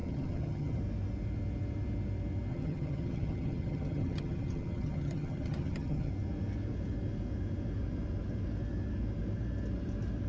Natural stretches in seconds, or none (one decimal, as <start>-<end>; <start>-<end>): 0.8-2.5; 6.1-10.3